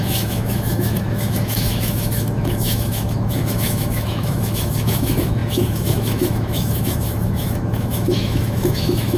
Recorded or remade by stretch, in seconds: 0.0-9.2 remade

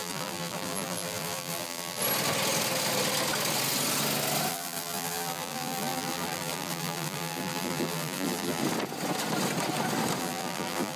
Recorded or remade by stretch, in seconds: 0.0-2.0 remade; 2.0-4.5 recorded; 4.5-8.6 remade; 8.6-10.2 recorded; 10.2-11.0 remade